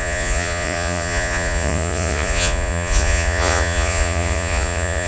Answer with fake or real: fake